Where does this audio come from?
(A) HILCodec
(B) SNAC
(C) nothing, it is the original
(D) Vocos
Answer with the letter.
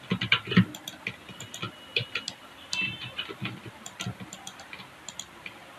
C